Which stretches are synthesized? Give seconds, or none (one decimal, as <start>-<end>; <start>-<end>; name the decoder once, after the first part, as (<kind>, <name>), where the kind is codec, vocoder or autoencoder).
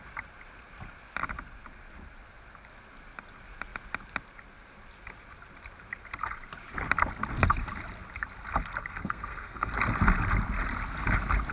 8.8-9.7 (codec, SNAC)